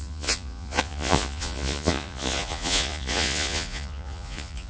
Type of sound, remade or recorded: remade